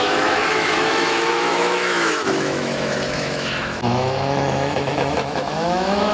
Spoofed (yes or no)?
yes